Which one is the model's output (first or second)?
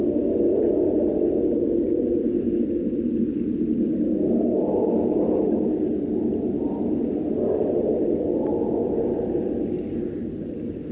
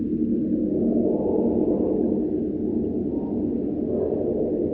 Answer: first